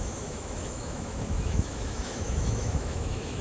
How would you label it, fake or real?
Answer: fake